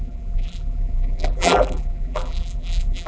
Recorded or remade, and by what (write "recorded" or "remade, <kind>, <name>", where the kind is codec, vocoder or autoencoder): remade, vocoder, BigVGAN v2